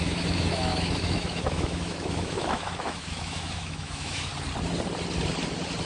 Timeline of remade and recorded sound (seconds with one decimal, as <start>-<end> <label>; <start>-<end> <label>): 0.0-4.3 remade; 4.3-5.9 recorded